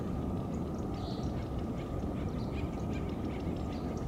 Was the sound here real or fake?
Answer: real